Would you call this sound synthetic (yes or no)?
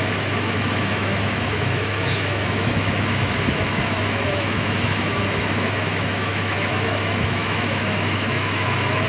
yes